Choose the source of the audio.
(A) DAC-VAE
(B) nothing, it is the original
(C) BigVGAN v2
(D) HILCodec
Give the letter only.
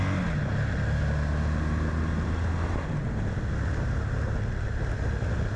B